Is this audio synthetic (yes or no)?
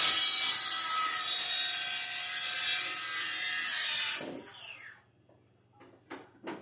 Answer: no